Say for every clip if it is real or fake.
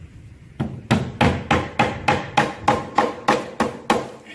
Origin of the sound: real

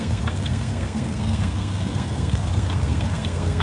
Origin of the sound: fake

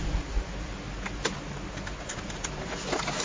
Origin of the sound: real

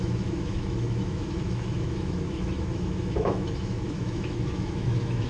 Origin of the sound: fake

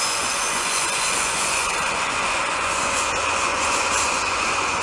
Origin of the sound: fake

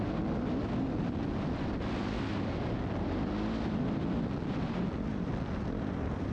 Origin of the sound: real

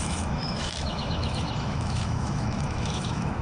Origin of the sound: fake